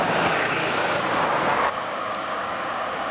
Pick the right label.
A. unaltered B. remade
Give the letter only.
B